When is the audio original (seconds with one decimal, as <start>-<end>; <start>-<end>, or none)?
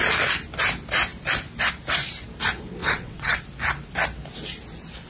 0.0-2.8; 3.4-5.1